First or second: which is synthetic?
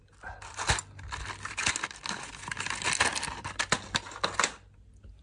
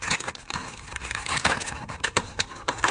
second